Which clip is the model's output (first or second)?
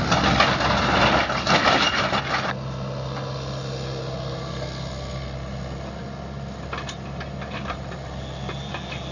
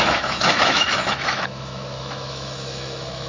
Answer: second